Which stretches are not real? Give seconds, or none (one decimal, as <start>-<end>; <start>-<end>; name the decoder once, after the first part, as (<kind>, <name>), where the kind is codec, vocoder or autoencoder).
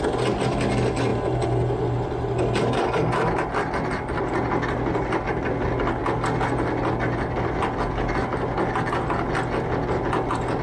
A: none